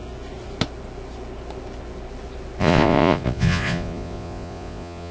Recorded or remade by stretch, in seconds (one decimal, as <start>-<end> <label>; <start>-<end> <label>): 0.0-2.6 recorded; 2.6-5.1 remade